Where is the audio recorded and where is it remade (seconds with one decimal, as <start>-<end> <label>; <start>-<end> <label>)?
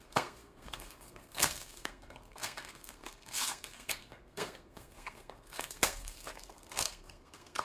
0.0-7.6 remade